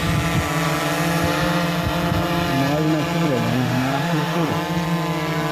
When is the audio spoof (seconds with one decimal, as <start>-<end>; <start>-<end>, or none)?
3.5-4.5

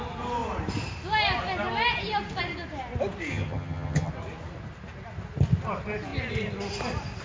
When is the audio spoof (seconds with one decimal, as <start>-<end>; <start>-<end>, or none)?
3.3-4.1

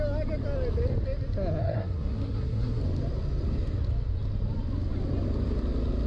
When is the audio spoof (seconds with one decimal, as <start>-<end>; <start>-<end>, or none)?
1.6-2.8